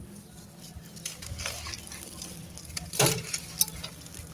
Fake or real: real